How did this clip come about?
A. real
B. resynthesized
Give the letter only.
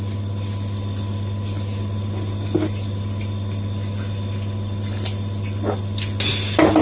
A